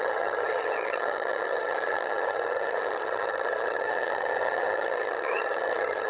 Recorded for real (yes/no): no